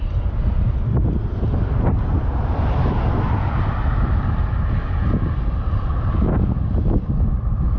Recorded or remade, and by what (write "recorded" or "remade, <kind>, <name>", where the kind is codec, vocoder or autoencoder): recorded